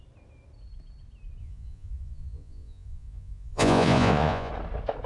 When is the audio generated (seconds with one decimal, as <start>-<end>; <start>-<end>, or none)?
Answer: 1.4-4.5